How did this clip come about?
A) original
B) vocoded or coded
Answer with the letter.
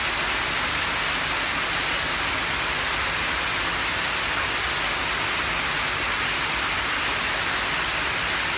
A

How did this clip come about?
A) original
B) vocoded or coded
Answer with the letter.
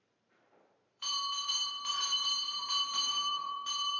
B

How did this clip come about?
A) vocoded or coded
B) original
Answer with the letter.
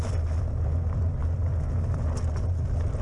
B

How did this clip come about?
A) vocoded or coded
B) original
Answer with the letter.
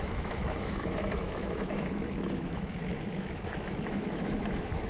A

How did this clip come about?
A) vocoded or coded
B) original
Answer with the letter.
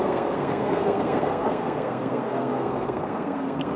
A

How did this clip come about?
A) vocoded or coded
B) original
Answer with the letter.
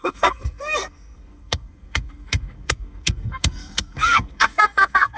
A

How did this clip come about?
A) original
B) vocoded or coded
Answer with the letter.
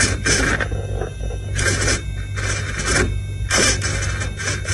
A